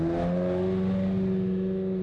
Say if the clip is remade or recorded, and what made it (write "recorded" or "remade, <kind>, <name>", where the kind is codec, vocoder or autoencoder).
recorded